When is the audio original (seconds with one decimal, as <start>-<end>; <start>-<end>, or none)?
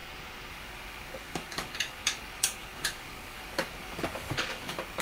0.0-0.5